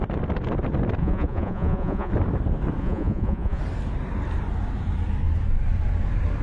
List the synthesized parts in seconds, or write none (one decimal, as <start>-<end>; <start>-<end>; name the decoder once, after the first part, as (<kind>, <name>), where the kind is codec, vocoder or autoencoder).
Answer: 1.0-2.1 (vocoder, Vocos); 2.8-3.6